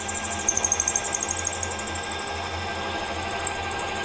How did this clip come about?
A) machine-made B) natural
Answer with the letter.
B